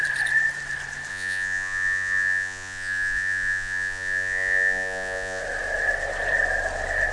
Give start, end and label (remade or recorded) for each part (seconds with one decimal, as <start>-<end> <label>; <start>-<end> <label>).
0.0-1.1 recorded; 1.1-5.4 remade; 5.4-7.1 recorded